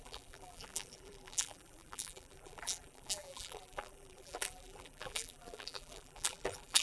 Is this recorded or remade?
remade